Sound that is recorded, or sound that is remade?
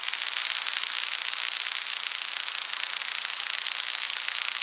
recorded